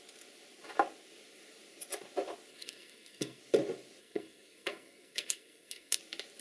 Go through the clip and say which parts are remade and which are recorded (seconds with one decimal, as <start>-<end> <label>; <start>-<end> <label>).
0.0-2.5 recorded; 2.5-3.4 remade; 3.4-4.0 recorded; 4.0-6.0 remade; 6.0-6.4 recorded